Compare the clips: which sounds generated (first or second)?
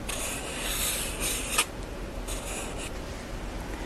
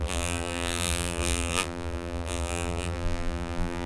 second